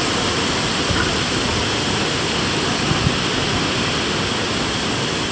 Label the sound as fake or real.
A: real